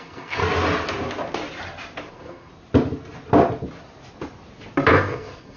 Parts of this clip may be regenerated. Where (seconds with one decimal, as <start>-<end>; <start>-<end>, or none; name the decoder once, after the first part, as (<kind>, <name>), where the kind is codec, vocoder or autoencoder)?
0.0-0.4 (codec, SNAC); 2.1-2.5; 4.9-5.6